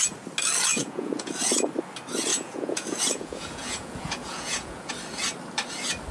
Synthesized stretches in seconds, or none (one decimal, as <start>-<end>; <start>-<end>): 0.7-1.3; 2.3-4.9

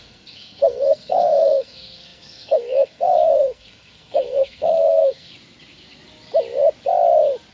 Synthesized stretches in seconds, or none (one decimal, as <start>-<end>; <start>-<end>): 0.0-5.3

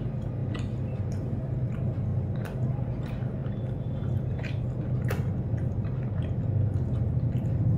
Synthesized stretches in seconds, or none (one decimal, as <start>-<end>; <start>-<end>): 0.0-0.4; 1.0-2.1; 2.7-7.8